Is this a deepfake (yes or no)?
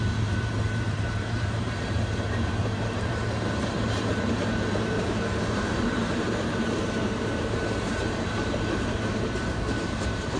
yes